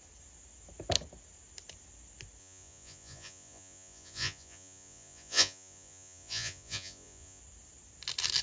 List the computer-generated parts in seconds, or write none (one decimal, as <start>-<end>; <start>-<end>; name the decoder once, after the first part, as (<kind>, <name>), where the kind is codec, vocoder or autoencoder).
2.4-7.4 (vocoder, Vocos)